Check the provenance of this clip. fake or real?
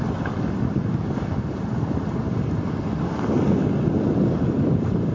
real